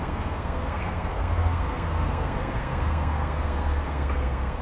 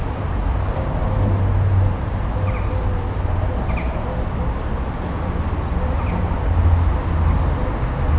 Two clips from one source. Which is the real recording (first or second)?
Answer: second